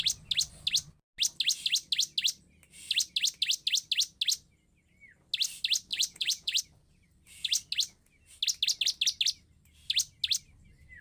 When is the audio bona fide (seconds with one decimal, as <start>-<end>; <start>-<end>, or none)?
0.0-5.9; 6.6-11.0